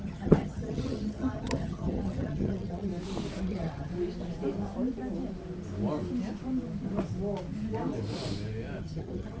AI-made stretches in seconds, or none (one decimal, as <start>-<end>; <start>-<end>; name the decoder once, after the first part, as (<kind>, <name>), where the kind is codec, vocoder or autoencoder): 0.0-2.9 (vocoder, HiFi-GAN); 3.4-3.9; 8.8-9.4